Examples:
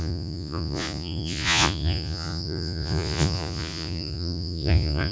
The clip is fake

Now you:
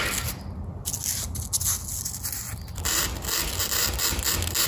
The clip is real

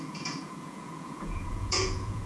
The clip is fake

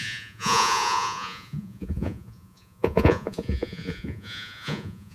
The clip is fake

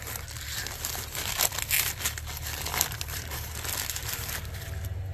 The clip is real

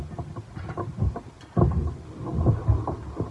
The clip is real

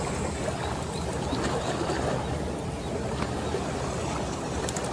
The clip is real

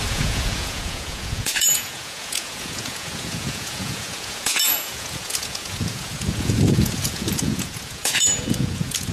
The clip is fake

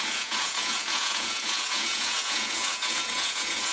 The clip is fake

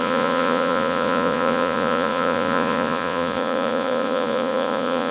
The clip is fake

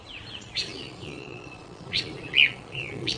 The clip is fake